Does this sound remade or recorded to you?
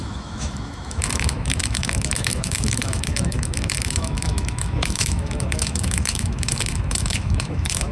remade